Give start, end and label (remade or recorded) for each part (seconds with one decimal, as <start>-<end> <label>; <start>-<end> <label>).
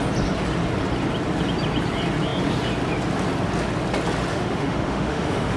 0.0-4.3 recorded; 4.3-5.6 remade